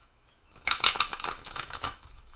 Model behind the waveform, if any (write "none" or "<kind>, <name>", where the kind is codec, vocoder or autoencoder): autoencoder, DAC-VAE